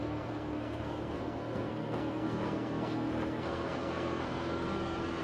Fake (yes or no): yes